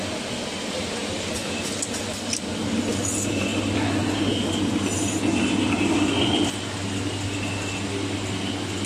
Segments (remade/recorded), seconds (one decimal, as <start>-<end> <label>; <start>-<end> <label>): 0.0-8.9 recorded